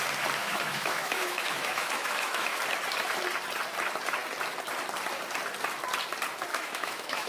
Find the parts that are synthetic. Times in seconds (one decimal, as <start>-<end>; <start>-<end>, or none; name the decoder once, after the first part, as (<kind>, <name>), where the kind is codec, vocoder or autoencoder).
0.4-2.6 (autoencoder, DAC-VAE); 6.5-7.3